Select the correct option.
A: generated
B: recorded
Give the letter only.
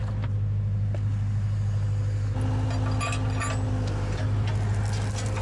B